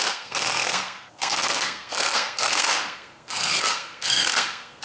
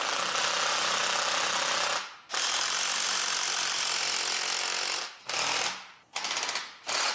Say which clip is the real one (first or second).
second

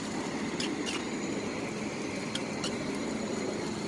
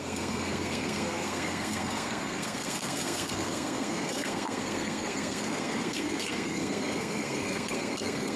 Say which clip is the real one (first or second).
first